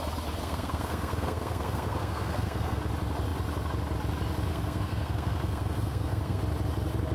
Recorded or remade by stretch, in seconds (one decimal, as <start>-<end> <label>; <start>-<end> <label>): 0.0-0.4 recorded; 0.4-2.8 remade; 2.8-4.5 recorded; 4.5-6.4 remade; 6.4-7.1 recorded